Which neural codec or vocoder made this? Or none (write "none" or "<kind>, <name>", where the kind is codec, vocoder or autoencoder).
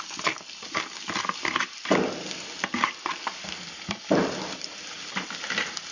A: none